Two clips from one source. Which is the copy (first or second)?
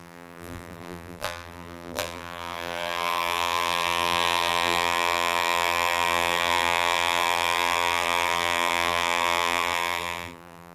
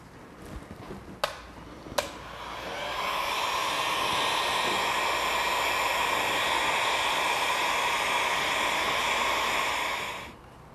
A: first